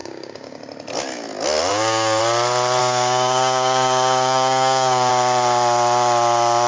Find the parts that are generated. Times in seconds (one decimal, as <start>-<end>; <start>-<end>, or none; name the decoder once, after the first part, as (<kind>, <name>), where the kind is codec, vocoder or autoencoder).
0.0-0.6 (codec, DAC); 1.7-2.2; 2.8-5.1